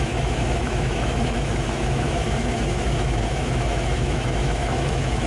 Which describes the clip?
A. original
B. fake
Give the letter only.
B